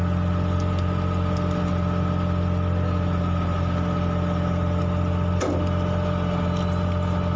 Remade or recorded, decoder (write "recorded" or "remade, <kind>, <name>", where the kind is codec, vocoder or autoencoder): recorded